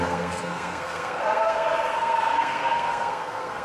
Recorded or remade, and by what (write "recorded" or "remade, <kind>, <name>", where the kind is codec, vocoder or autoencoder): remade, codec, SNAC